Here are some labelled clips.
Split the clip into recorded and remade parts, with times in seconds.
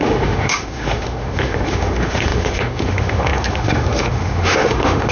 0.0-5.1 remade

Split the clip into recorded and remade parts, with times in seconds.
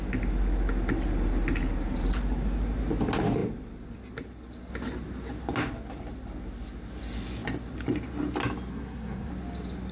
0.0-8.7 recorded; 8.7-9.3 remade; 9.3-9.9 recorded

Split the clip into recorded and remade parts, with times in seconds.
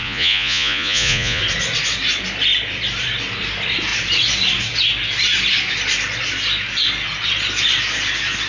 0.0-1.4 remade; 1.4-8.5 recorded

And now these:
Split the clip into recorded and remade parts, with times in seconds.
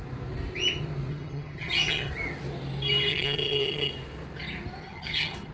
0.0-1.1 recorded; 1.1-2.1 remade; 2.1-3.1 recorded; 3.1-3.9 remade; 3.9-4.8 recorded; 4.8-5.5 remade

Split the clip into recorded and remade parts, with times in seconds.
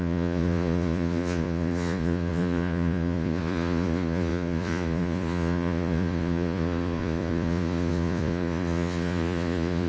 0.0-9.9 remade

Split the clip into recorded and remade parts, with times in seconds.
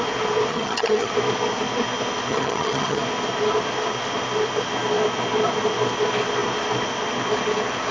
0.0-0.5 recorded; 0.5-1.1 remade; 1.1-2.3 recorded; 2.3-3.0 remade; 3.0-7.9 recorded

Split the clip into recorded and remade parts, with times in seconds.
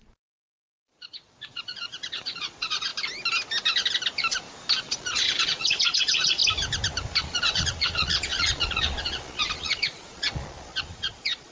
0.0-2.9 remade; 2.9-4.8 recorded; 4.8-6.4 remade; 6.4-7.2 recorded; 7.2-11.5 remade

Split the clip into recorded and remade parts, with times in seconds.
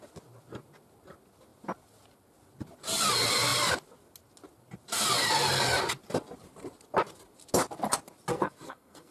0.0-8.3 recorded; 8.3-9.1 remade